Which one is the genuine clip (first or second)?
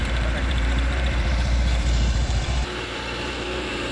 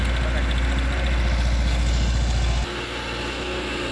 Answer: second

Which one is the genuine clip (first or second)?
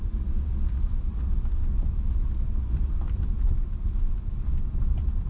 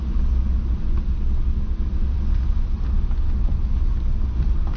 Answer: second